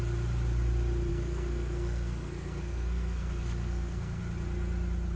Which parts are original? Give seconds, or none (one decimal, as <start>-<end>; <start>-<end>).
0.0-1.1; 4.2-5.2